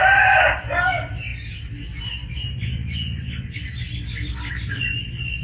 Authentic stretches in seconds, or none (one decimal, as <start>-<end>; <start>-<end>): 0.0-5.4